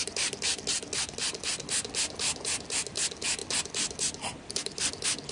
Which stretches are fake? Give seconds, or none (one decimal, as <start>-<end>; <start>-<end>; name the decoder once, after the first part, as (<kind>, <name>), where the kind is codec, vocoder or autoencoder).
none